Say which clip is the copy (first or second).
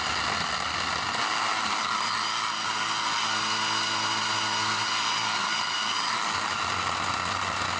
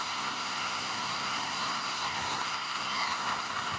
second